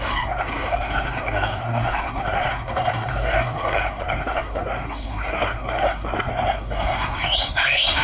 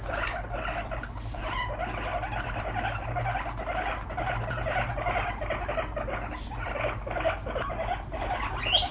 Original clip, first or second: second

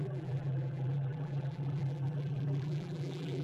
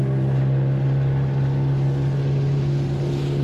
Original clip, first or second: second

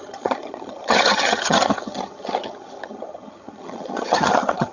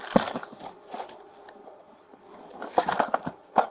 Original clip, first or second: second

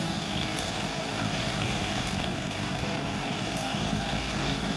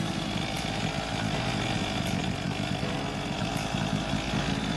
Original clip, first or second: second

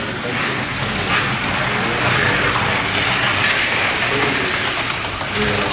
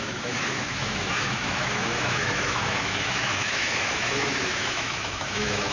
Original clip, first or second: first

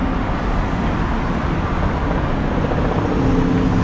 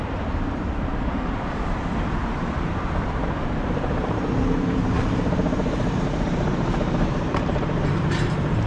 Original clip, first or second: first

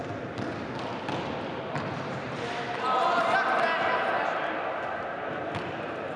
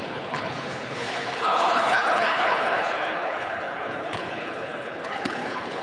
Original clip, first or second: first